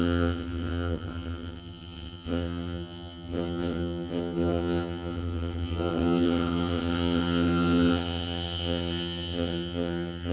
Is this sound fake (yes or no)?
yes